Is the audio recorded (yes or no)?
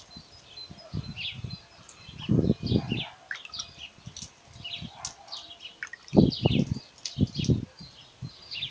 yes